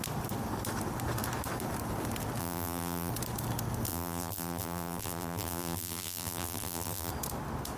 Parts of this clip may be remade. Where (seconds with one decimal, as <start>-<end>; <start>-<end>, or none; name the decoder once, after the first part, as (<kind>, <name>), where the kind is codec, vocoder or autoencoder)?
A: 2.4-3.1 (vocoder, BigVGAN v2); 3.9-7.1